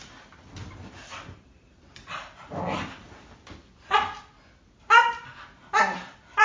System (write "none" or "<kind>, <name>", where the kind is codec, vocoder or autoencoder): none